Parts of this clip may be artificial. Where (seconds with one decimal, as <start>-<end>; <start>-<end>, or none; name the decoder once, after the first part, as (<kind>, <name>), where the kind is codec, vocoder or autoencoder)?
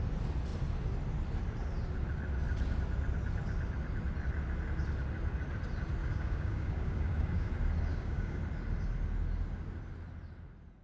6.0-7.5 (codec, DAC); 7.9-8.4